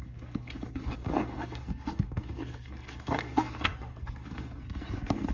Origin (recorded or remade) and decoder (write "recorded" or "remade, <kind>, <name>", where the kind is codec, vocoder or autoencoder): remade, codec, SNAC